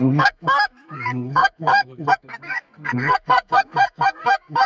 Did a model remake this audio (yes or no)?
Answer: yes